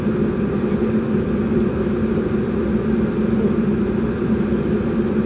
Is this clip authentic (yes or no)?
yes